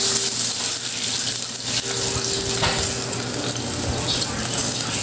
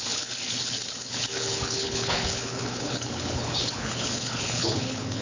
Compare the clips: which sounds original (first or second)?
first